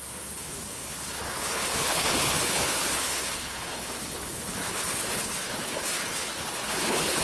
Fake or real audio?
fake